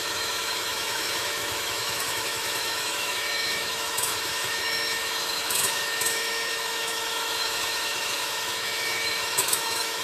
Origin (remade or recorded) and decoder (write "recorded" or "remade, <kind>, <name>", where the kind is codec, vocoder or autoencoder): remade, autoencoder, DAC-VAE